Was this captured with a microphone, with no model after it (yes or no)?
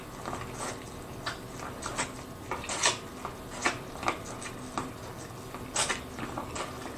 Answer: yes